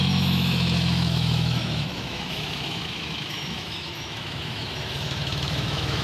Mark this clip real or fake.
fake